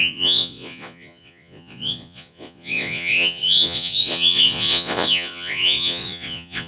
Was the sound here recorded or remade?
remade